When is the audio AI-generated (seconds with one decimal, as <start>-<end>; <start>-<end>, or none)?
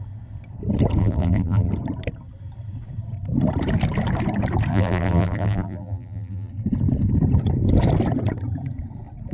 1.0-1.7; 4.7-6.5